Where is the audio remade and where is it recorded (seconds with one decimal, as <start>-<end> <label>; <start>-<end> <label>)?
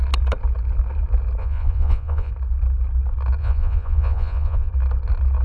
0.0-1.4 recorded; 1.4-2.3 remade; 2.3-3.4 recorded; 3.4-4.7 remade; 4.7-5.4 recorded